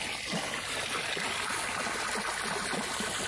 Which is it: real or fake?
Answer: real